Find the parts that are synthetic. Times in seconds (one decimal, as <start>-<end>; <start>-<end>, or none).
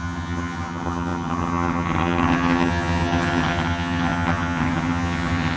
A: 0.0-5.6